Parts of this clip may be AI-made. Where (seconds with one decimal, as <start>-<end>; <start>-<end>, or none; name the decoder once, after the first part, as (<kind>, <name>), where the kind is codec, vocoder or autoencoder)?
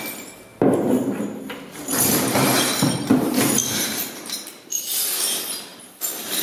0.5-1.4 (vocoder, BigVGAN v2); 1.9-4.9